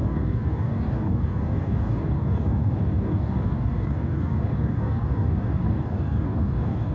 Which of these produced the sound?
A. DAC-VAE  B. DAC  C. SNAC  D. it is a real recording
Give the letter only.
B